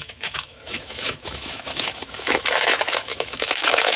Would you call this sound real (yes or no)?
no